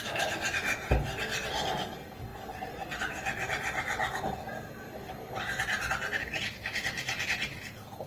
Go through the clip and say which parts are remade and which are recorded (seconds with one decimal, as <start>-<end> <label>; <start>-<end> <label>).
0.0-8.1 recorded